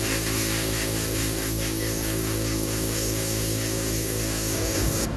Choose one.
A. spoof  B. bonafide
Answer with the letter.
A